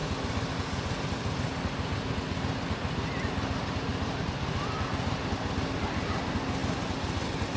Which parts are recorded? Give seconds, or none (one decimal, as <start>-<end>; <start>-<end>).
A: 0.0-7.6